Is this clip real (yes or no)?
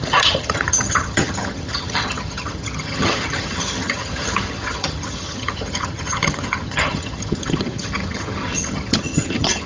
no